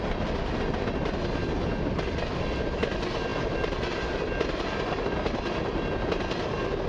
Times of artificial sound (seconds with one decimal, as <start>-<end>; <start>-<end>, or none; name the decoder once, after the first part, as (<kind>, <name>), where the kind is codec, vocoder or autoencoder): none